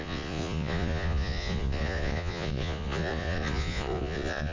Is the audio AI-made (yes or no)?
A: yes